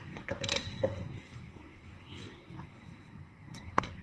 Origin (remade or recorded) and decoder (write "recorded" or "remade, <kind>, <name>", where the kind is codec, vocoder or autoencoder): remade, codec, SNAC